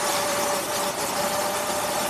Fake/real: real